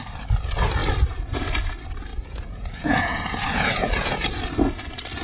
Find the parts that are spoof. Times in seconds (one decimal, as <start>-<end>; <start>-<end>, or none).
2.1-4.4